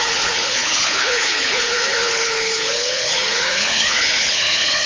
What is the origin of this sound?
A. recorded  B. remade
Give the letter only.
B